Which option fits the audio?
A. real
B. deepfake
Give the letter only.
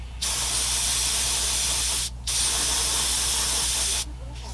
A